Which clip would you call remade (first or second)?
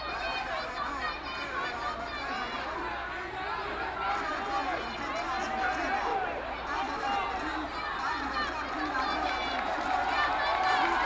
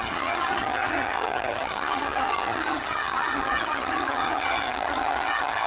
second